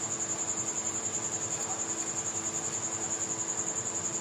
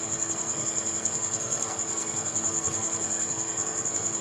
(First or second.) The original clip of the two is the first